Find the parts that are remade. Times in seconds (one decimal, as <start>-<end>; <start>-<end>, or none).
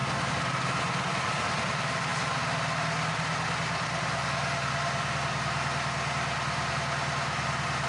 1.1-2.1; 6.7-7.9